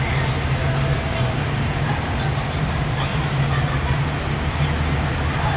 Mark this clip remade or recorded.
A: recorded